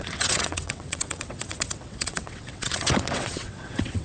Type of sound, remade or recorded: remade